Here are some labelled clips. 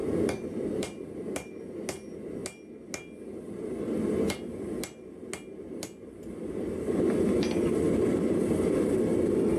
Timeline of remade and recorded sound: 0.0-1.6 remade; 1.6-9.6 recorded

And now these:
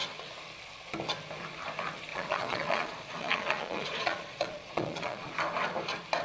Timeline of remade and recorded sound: 0.0-2.1 recorded; 2.1-5.3 remade; 5.3-6.2 recorded

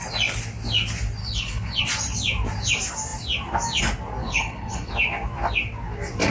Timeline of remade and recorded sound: 0.0-1.2 recorded; 1.2-1.8 remade; 1.8-4.2 recorded; 4.2-4.9 remade; 4.9-6.3 recorded

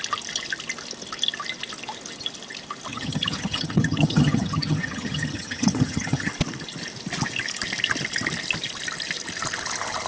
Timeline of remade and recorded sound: 0.0-2.9 recorded; 2.9-6.3 remade; 6.3-10.1 recorded

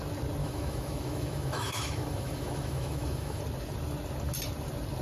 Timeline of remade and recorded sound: 0.0-0.4 recorded; 0.4-3.4 remade; 3.4-5.0 recorded

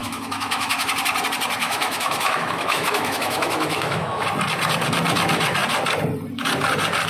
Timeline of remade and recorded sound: 0.0-0.9 remade; 0.9-1.6 recorded; 1.6-4.2 remade; 4.2-7.1 recorded